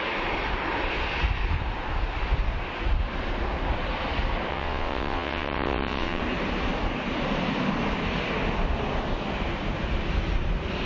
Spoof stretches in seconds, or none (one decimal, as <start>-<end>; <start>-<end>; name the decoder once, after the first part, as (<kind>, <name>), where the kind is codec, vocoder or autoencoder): 4.5-6.2 (vocoder, WaveNeXt)